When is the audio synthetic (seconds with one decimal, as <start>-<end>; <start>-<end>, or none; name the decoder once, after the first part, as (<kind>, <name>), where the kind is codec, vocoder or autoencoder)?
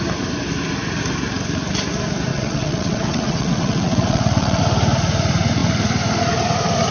2.3-4.6 (vocoder, WaveNeXt)